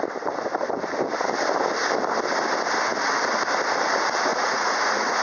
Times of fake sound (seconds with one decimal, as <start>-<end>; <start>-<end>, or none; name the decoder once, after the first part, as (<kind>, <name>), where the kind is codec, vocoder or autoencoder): 4.3-5.2 (vocoder, Vocos)